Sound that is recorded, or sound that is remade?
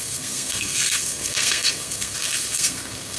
remade